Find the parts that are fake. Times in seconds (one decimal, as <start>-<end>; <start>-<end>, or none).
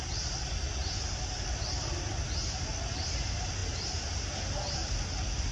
none